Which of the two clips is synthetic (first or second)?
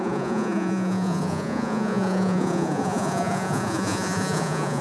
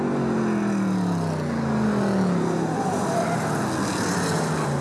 first